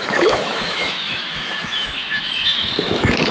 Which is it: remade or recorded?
remade